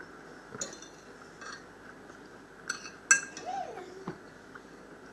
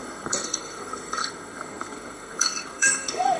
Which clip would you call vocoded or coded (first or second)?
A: second